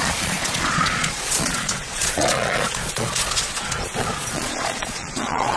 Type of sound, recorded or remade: remade